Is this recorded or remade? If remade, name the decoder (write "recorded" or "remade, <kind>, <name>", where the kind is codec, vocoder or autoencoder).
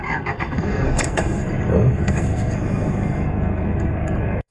remade, codec, SNAC